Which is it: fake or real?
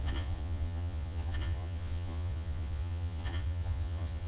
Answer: fake